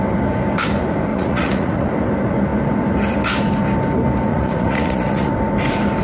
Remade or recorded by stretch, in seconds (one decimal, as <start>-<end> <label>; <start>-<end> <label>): 0.0-1.1 recorded; 1.1-1.9 remade; 1.9-4.3 recorded; 4.3-5.3 remade; 5.3-6.0 recorded